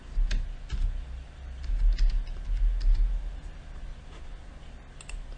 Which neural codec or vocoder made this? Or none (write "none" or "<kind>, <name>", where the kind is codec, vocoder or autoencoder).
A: none